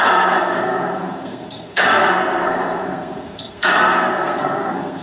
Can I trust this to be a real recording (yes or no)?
no